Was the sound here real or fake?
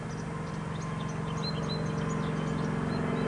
real